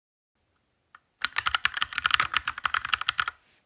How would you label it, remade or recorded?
recorded